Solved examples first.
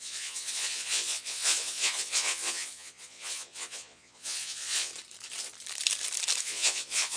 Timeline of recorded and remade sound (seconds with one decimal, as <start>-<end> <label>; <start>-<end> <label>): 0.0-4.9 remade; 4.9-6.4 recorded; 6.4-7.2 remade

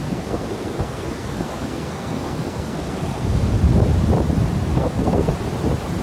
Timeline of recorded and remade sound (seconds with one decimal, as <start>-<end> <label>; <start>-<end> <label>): 0.0-3.6 remade; 3.6-4.7 recorded; 4.7-5.3 remade; 5.3-6.0 recorded

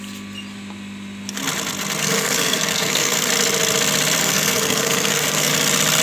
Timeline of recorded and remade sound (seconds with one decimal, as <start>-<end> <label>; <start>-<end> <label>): 0.0-2.0 recorded; 2.0-3.3 remade; 3.3-4.2 recorded; 4.2-5.5 remade; 5.5-6.0 recorded

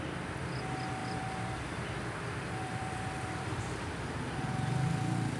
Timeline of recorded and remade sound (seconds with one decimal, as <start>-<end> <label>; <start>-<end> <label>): 0.0-1.0 recorded; 1.0-3.6 remade; 3.6-5.4 recorded